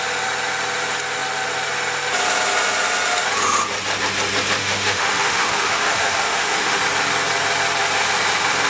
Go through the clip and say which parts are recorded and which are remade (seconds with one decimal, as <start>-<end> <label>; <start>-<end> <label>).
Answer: 0.0-4.6 recorded; 4.6-6.8 remade; 6.8-8.7 recorded